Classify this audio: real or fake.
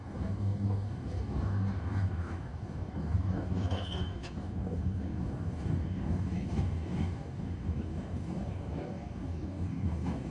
fake